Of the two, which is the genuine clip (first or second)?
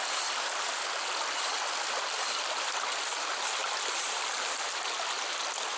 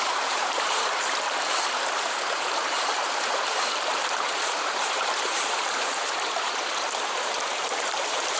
first